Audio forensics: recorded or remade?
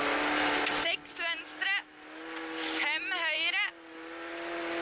recorded